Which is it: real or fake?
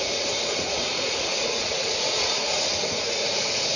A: fake